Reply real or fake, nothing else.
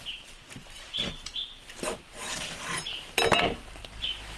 real